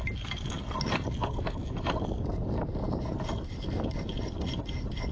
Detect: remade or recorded recorded